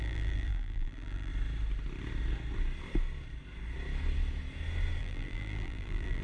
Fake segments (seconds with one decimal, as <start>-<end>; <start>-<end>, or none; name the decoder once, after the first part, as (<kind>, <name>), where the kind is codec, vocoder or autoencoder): 0.0-1.3 (vocoder, BigVGAN v2); 5.0-6.2